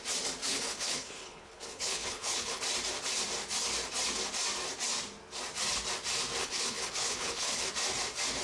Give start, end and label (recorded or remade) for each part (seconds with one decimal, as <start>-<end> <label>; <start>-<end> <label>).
0.0-0.4 recorded; 0.4-2.6 remade; 2.6-6.4 recorded; 6.4-7.7 remade; 7.7-8.4 recorded